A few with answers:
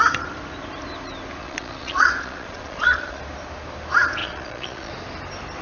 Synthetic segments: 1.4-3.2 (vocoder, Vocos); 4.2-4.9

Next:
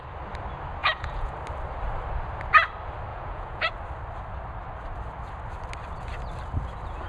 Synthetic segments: 0.8-1.3 (vocoder, Vocos); 3.1-3.7

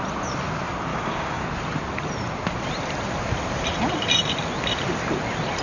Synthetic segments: 0.9-1.4 (codec, DAC)

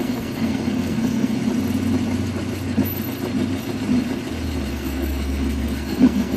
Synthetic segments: 0.0-1.4 (codec, SNAC); 4.7-6.4

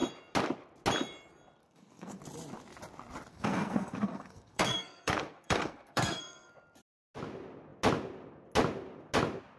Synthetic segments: 1.6-2.2 (codec, SNAC); 3.3-6.5